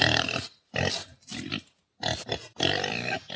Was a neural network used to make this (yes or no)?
no